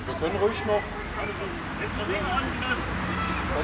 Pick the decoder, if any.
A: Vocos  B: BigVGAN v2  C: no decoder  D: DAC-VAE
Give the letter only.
C